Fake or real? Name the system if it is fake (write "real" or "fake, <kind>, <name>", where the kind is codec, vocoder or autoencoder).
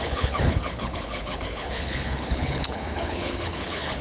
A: fake, codec, HILCodec